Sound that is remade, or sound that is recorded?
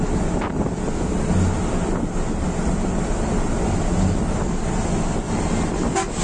recorded